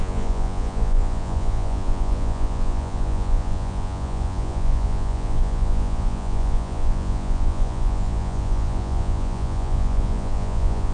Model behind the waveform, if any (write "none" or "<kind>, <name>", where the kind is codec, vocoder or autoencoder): vocoder, Vocos